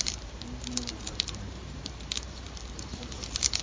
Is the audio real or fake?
fake